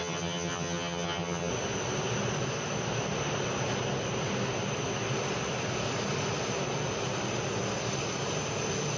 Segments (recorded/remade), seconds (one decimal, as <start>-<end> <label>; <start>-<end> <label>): 0.0-1.5 remade; 1.5-9.0 recorded